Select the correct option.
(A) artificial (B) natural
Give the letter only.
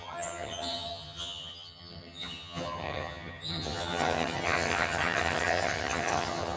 A